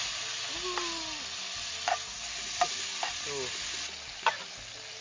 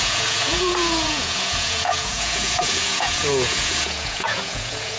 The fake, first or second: second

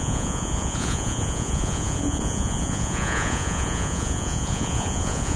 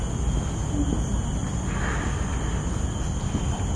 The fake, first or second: first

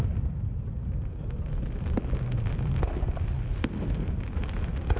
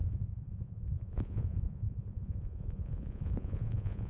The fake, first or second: second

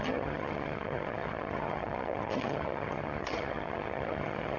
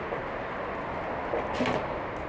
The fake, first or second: first